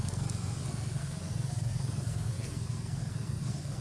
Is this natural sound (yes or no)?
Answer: no